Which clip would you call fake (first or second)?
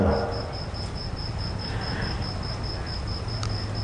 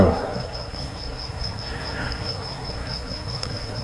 second